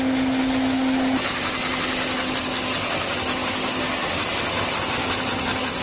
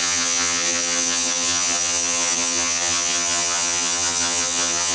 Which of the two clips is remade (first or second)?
second